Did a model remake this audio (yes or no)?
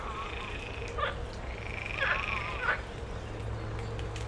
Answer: no